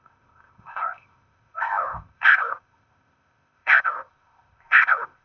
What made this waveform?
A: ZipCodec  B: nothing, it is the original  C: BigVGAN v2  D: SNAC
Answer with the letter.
A